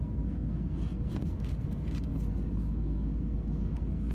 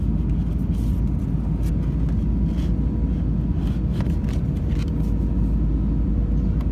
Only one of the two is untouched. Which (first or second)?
second